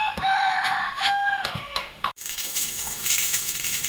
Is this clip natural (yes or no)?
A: no